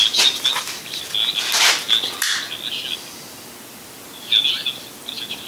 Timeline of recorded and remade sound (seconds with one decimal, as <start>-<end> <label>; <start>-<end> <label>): 0.0-5.5 recorded